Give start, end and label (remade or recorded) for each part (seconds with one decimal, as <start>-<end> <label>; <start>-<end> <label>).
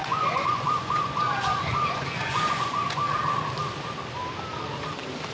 0.0-3.0 remade; 3.0-5.3 recorded